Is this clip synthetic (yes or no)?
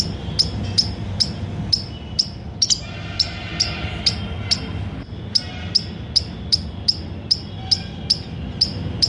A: no